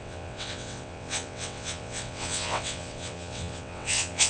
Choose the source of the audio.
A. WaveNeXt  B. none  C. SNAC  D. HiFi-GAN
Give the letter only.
A